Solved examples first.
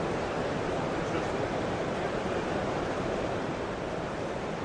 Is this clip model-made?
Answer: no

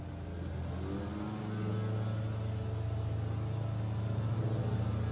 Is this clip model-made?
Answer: no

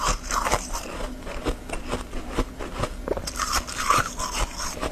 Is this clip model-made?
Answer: no